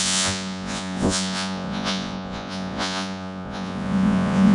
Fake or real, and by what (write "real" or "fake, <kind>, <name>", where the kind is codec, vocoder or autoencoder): fake, vocoder, Vocos